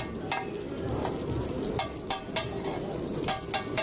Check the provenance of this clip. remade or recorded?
recorded